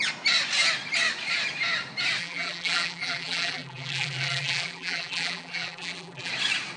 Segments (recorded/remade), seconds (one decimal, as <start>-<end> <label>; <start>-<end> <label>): 0.0-2.2 recorded; 2.2-6.3 remade; 6.3-6.8 recorded